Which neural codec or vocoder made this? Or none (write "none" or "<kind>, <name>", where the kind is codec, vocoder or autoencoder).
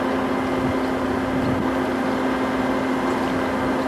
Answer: none